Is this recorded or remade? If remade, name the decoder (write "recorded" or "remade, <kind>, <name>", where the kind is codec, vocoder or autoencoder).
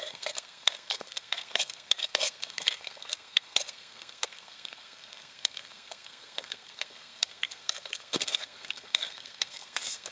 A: remade, codec, SNAC